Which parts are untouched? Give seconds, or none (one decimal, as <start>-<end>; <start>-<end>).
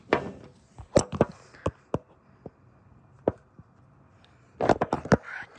0.0-5.6